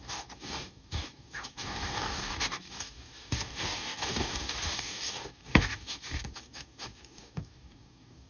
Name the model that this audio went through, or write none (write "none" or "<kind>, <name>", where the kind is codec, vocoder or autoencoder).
codec, DAC